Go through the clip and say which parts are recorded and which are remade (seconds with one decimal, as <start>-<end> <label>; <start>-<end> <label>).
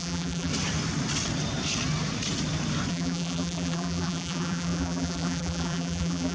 0.0-0.5 remade; 0.5-2.9 recorded; 2.9-6.3 remade